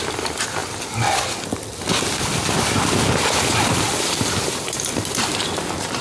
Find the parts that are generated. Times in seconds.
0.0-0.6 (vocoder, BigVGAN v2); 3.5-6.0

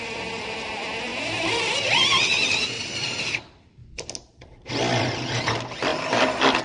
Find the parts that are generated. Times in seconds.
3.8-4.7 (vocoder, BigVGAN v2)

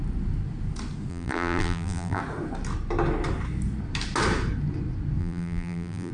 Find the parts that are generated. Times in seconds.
1.1-2.2 (vocoder, BigVGAN v2); 5.2-6.1